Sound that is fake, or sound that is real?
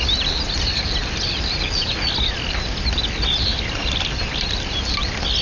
real